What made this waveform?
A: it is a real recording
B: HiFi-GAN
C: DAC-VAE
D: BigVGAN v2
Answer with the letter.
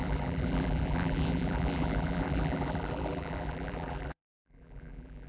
D